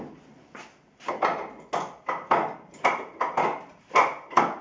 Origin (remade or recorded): recorded